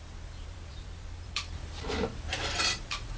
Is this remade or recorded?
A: remade